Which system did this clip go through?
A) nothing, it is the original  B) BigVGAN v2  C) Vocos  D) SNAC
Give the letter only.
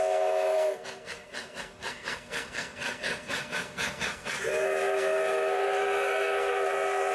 D